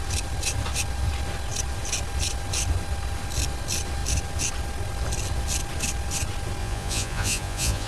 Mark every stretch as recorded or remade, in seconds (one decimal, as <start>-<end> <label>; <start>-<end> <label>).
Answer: 0.0-6.6 recorded; 6.6-7.9 remade